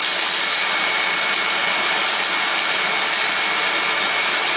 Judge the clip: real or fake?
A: real